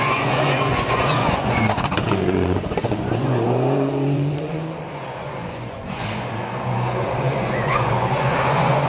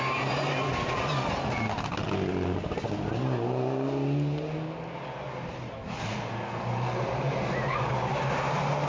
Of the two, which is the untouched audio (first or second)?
second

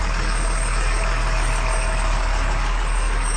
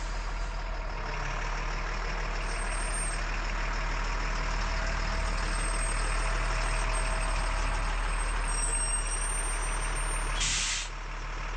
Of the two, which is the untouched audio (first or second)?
second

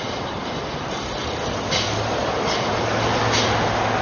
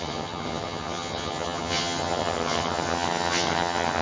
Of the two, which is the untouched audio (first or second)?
first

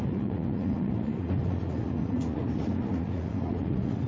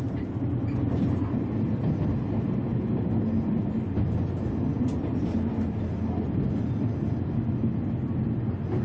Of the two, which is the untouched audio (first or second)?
second